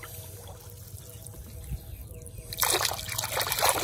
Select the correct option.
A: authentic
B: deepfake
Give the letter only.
A